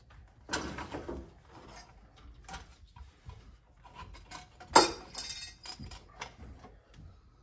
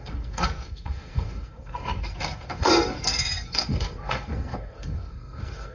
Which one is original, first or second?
first